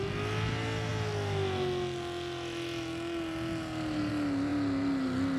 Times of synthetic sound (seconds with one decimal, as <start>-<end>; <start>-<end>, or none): none